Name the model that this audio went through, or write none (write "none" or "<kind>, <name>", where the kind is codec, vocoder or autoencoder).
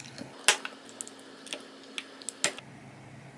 none